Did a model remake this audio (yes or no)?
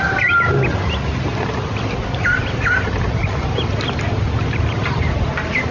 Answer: no